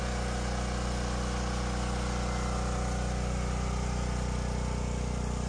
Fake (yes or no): no